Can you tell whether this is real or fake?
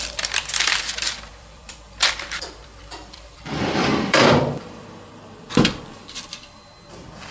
fake